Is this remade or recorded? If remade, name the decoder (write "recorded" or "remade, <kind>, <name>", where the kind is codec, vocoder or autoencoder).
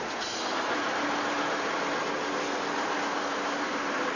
recorded